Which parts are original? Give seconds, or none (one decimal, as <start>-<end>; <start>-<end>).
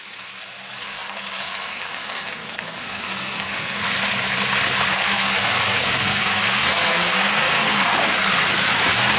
3.8-4.9; 7.9-9.2